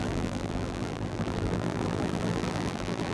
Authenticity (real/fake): fake